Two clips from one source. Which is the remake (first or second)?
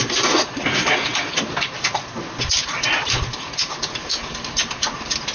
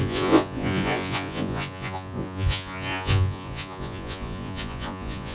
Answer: second